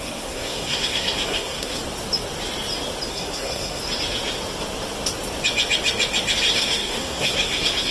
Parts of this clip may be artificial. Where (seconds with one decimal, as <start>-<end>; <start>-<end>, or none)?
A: 0.0-1.8; 3.1-3.8; 6.5-7.9